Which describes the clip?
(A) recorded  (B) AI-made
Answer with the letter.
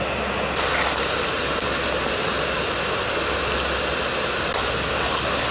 A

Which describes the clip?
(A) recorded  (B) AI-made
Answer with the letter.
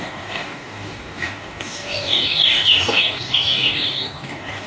B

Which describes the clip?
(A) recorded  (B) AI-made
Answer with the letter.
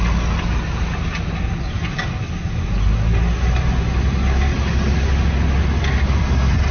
A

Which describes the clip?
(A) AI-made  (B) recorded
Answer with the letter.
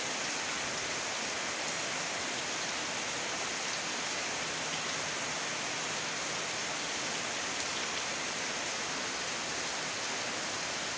B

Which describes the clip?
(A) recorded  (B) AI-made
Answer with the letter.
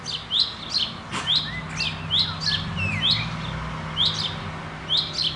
A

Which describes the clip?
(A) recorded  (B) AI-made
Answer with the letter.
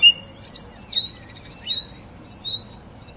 A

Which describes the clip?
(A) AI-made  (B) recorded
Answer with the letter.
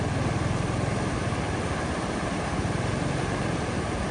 A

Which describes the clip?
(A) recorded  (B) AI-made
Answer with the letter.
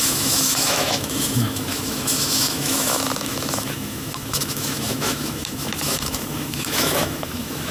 B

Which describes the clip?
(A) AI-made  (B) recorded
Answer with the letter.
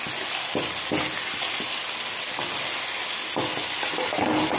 B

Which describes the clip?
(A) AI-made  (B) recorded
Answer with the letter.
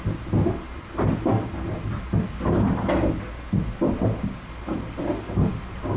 B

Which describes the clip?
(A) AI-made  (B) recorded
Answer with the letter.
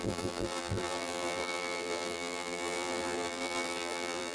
A